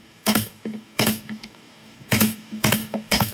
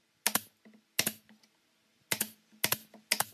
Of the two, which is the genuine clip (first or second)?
second